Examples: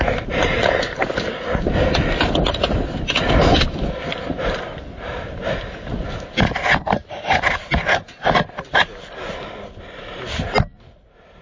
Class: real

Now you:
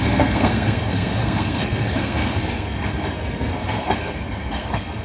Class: fake